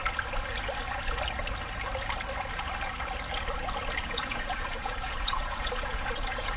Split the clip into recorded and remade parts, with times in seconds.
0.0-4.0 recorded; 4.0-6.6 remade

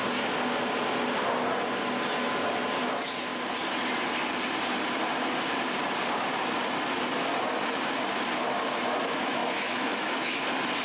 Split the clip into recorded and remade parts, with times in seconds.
0.0-9.4 recorded; 9.4-10.4 remade; 10.4-10.8 recorded

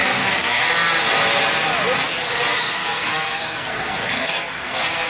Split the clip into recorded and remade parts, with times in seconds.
0.0-0.6 remade; 0.6-2.5 recorded; 2.5-5.1 remade

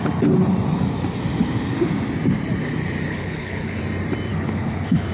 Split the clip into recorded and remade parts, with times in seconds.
0.0-3.1 recorded; 3.1-3.8 remade; 3.8-4.3 recorded; 4.3-5.1 remade

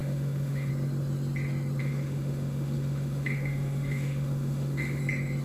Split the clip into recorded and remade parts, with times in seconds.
0.0-0.7 remade; 0.7-1.8 recorded; 1.8-5.0 remade; 5.0-5.4 recorded